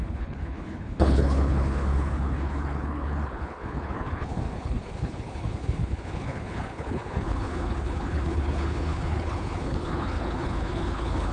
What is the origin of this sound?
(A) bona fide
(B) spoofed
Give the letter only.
B